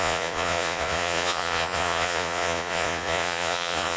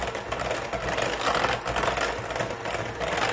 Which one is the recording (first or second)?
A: second